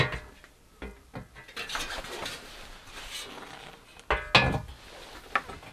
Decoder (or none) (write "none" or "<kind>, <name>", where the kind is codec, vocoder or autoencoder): none